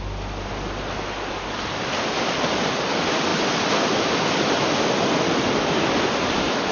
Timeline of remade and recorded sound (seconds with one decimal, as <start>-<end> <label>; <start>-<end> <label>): 0.0-6.7 recorded